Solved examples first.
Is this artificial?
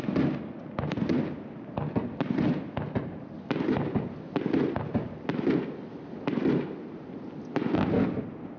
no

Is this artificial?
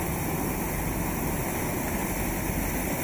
no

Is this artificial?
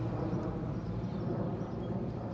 yes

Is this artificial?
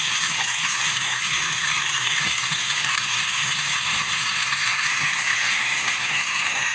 yes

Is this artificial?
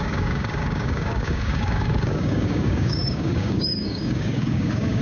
yes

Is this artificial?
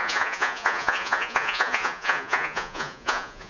yes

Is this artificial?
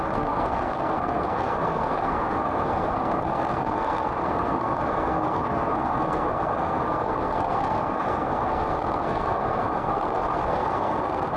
yes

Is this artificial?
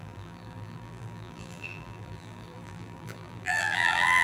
yes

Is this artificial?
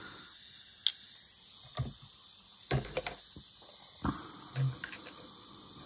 no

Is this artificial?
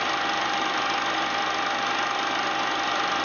no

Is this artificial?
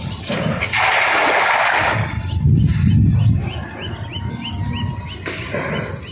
no